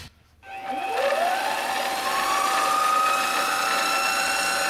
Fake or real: real